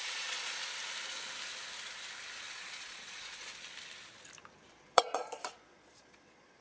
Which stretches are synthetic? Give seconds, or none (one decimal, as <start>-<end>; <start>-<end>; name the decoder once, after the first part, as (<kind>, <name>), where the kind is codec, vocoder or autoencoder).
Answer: 0.0-0.6 (vocoder, Vocos); 2.5-3.5; 4.7-6.6